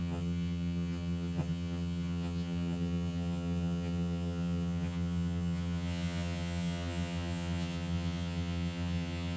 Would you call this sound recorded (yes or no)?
no